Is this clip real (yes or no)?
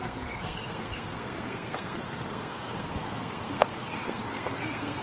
no